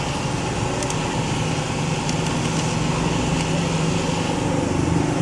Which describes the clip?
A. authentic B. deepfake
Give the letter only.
A